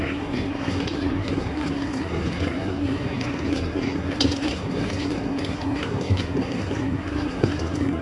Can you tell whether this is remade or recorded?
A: remade